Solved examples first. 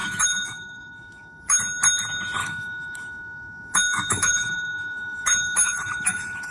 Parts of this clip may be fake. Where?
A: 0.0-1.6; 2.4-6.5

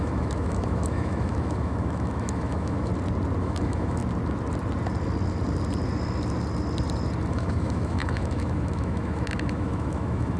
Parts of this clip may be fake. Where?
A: 0.0-2.9; 3.4-4.0; 7.3-10.4

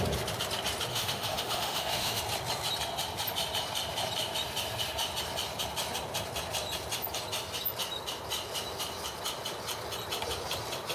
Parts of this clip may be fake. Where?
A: 0.9-2.2

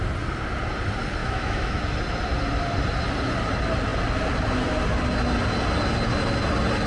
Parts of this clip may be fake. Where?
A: 1.2-1.8